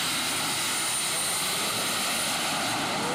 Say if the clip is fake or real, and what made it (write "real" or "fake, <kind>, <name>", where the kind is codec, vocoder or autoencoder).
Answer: real